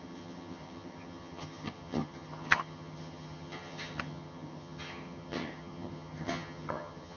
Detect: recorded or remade remade